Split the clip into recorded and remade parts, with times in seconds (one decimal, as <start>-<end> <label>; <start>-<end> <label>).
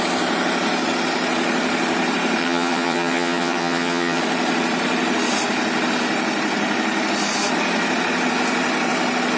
0.0-2.4 recorded; 2.4-4.2 remade; 4.2-9.4 recorded